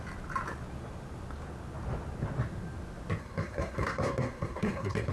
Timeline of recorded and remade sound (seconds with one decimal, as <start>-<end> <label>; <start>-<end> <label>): 0.0-3.2 recorded; 3.2-5.1 remade